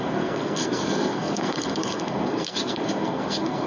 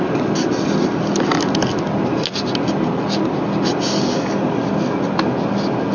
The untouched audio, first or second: second